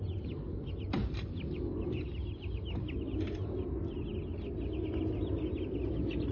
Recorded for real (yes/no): yes